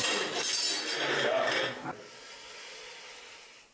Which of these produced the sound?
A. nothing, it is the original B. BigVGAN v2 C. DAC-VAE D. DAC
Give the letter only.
A